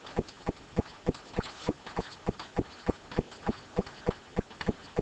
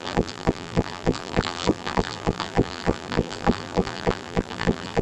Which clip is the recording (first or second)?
first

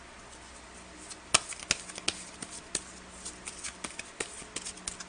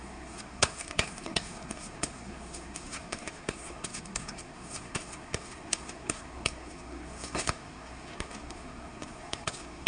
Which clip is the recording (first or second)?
first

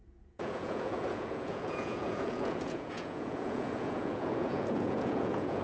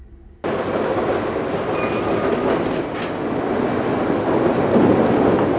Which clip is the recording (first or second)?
second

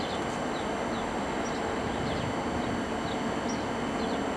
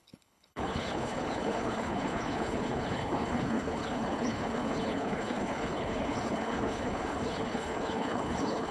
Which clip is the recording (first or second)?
first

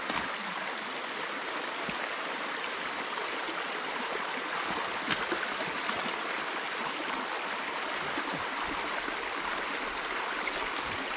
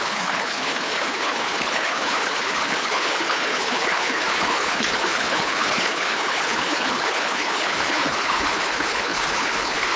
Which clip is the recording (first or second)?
first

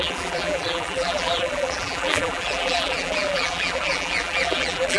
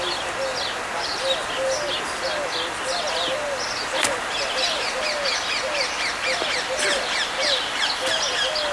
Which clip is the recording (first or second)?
second